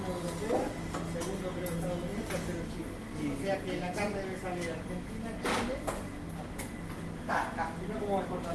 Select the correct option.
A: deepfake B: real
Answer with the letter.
B